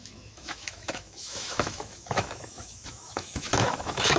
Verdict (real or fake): fake